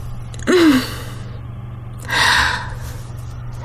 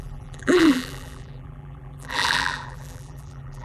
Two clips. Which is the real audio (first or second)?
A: first